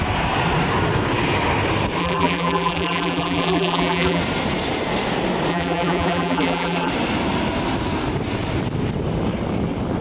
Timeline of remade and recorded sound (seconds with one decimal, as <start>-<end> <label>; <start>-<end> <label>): 0.0-2.0 recorded; 2.0-4.2 remade; 4.2-5.5 recorded; 5.5-6.9 remade; 6.9-10.0 recorded